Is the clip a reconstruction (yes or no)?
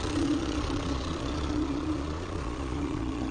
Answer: yes